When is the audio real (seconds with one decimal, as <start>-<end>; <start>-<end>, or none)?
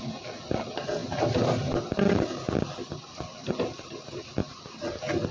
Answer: 0.0-5.3